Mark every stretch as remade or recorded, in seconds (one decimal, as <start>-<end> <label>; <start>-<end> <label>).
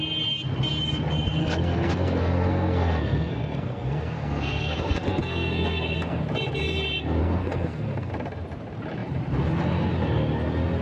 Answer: 0.0-1.4 recorded; 1.4-6.2 remade; 6.2-7.2 recorded; 7.2-8.1 remade; 8.1-10.8 recorded